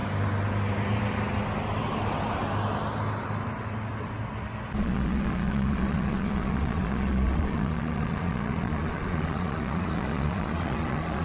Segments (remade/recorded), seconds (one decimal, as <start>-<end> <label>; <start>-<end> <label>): 0.0-4.8 recorded; 4.8-11.2 remade